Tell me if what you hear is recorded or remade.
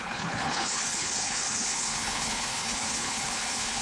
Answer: remade